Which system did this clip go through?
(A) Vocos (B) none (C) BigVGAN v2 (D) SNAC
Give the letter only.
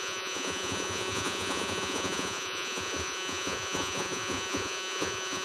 A